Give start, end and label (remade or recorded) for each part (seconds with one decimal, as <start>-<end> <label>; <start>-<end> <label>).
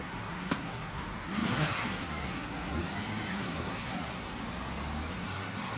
0.0-2.8 remade; 2.8-3.3 recorded; 3.3-4.4 remade; 4.4-5.1 recorded; 5.1-5.8 remade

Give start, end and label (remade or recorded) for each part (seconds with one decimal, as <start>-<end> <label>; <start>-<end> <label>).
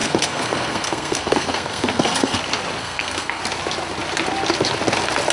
0.0-2.4 remade; 2.4-2.8 recorded; 2.8-3.4 remade; 3.4-5.3 recorded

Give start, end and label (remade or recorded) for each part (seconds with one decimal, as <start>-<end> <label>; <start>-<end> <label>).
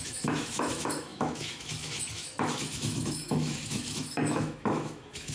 0.0-5.3 remade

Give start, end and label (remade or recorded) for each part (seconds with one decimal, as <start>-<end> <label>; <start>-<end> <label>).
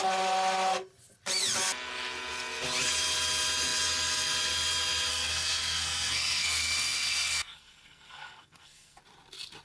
0.0-5.1 recorded; 5.1-9.0 remade; 9.0-9.6 recorded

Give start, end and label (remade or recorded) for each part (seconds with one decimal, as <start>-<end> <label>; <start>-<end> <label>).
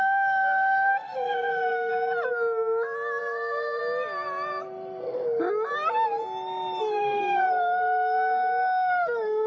0.0-1.9 remade; 1.9-3.2 recorded; 3.2-3.8 remade; 3.8-6.8 recorded; 6.8-9.5 remade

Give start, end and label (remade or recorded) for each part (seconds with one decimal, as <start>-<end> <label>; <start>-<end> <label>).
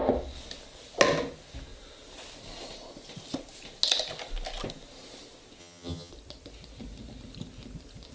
0.0-5.6 recorded; 5.6-6.1 remade; 6.1-8.1 recorded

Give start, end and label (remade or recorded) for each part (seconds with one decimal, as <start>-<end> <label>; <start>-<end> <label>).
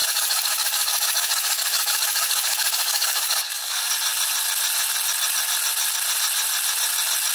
0.0-3.9 remade; 3.9-7.3 recorded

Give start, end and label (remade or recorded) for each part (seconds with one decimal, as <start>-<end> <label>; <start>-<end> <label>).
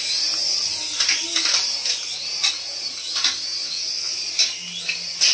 0.0-3.6 recorded; 3.6-4.2 remade; 4.2-5.3 recorded